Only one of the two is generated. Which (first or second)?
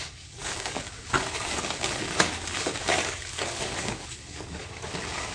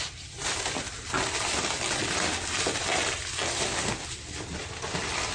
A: first